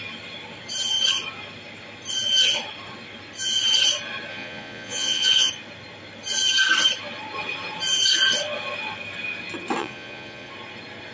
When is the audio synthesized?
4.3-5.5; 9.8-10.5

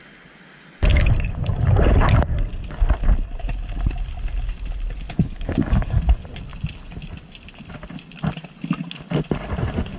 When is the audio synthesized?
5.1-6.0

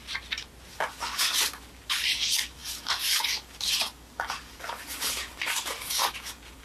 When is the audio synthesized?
0.7-6.6